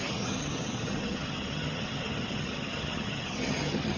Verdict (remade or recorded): remade